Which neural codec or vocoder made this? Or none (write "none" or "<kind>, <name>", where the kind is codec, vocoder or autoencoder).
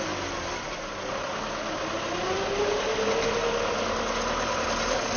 none